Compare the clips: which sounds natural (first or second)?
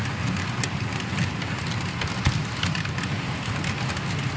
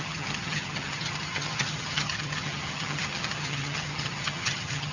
first